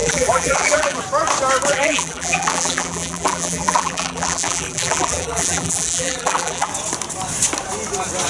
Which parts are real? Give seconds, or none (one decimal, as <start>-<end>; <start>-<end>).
1.0-1.7; 6.7-8.3